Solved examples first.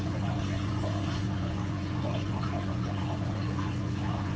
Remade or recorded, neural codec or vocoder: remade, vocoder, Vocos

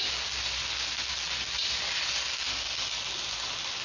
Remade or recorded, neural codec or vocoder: recorded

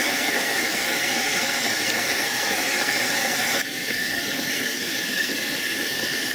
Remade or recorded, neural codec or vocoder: remade, codec, SNAC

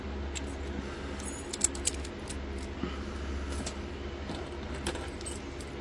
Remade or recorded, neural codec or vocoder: recorded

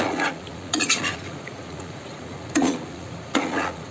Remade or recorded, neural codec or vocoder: remade, vocoder, Vocos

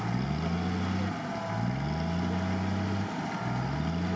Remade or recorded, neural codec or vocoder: recorded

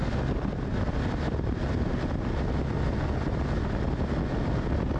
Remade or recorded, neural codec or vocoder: recorded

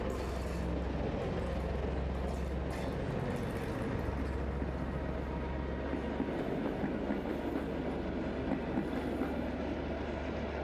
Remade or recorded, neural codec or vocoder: recorded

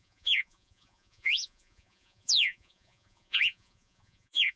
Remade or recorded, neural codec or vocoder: remade, vocoder, Vocos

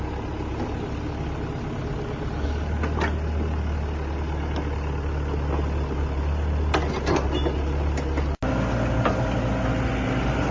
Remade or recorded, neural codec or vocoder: recorded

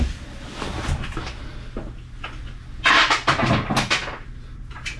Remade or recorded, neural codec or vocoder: recorded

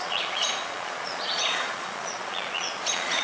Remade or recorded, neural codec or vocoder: remade, vocoder, Vocos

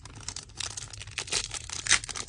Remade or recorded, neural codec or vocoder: recorded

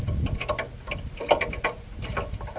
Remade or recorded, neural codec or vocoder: recorded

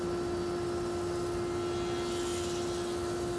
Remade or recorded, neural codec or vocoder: recorded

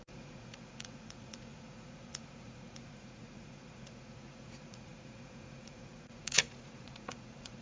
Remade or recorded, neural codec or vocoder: remade, vocoder, Vocos